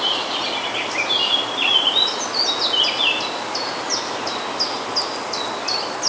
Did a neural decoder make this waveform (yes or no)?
no